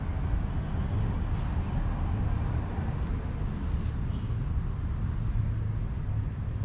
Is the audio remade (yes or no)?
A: no